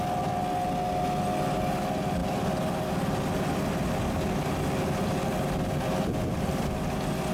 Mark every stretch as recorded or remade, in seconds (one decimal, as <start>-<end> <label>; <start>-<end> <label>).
0.0-7.3 recorded